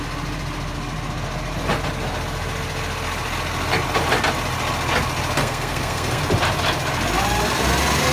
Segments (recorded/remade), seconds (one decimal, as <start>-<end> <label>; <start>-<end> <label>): 0.0-5.4 recorded; 5.4-6.2 remade; 6.2-8.1 recorded